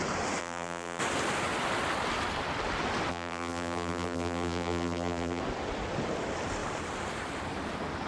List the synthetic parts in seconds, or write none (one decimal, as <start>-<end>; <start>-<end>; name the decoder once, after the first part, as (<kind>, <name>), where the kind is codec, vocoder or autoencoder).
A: 0.4-1.0 (vocoder, BigVGAN v2); 3.1-5.4